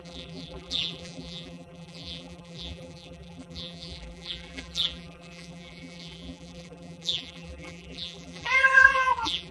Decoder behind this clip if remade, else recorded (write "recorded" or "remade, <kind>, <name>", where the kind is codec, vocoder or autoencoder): remade, vocoder, BigVGAN v2